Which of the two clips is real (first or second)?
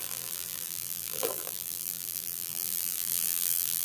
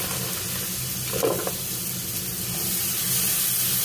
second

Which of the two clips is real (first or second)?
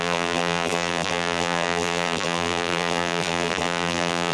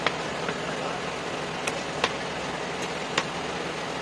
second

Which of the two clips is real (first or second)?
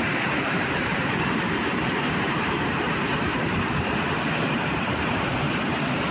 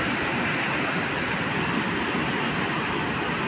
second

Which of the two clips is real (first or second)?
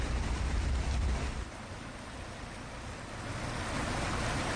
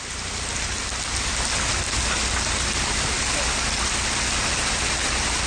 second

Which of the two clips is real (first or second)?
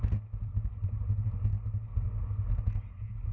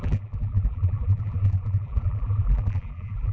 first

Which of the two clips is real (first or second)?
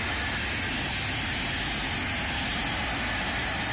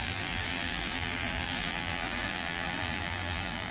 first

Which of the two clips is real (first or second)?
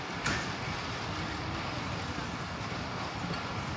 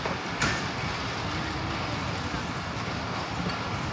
second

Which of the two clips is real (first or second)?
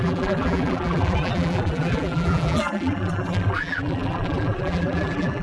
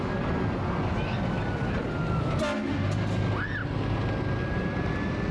second